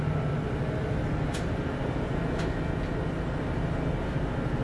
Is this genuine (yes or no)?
yes